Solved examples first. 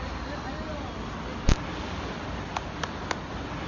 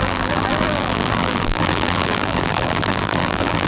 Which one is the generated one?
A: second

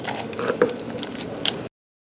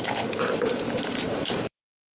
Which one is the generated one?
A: second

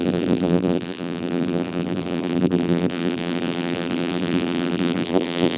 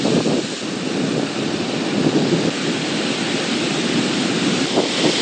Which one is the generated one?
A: first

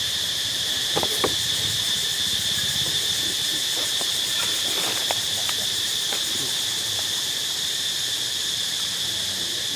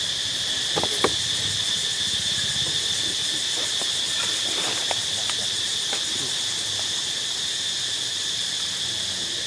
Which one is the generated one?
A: first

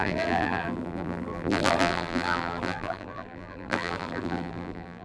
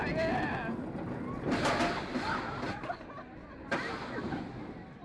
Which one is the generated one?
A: first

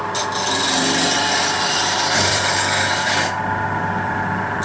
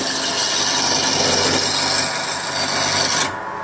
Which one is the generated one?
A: first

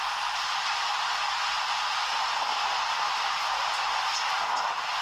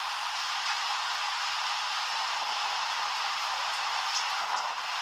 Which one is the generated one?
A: second